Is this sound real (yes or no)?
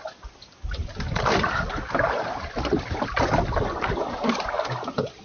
yes